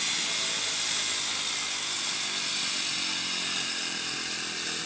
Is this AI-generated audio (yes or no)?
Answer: no